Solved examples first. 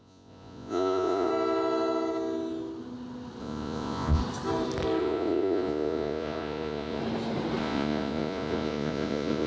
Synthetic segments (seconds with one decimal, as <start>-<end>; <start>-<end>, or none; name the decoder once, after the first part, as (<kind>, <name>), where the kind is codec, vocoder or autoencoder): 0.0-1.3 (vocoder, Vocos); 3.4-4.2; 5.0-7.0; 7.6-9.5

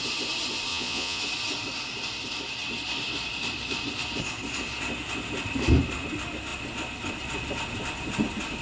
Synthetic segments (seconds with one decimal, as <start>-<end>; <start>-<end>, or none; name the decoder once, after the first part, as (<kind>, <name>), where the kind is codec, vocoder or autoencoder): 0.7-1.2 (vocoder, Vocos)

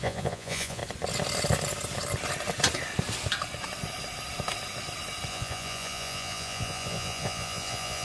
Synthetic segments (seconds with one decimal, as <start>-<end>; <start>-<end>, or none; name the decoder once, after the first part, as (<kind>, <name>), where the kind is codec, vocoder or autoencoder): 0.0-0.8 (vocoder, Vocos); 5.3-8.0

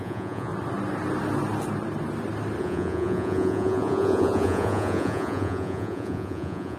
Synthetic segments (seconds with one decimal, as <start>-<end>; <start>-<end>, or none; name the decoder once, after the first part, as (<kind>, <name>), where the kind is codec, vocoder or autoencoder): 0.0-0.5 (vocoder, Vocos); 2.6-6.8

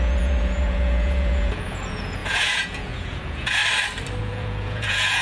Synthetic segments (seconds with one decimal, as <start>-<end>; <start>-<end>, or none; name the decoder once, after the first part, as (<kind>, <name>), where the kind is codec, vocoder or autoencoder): 0.0-3.6 (vocoder, Vocos); 4.2-5.2

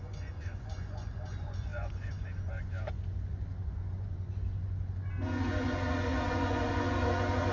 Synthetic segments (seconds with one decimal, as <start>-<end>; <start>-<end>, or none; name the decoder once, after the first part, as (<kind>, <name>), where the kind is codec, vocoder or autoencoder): 0.0-7.5 (vocoder, Vocos)

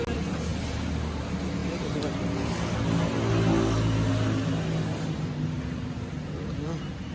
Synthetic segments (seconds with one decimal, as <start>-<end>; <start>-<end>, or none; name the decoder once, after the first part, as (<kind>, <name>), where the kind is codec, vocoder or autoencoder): none

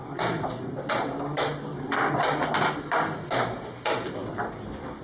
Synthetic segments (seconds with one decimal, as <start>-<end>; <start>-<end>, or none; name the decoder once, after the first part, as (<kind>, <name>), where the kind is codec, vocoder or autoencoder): none